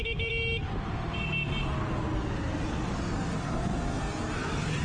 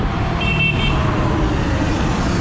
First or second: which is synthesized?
second